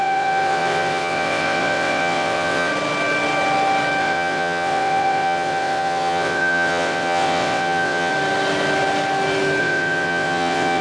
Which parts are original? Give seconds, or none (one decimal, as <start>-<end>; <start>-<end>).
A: 2.7-4.0; 8.1-9.6